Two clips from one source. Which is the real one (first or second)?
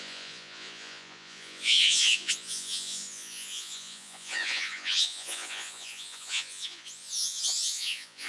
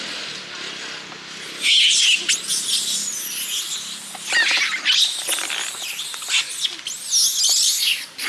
second